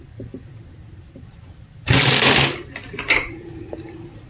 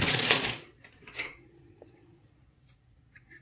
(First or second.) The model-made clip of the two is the second